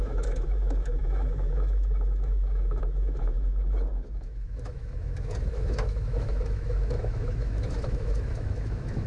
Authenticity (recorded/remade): remade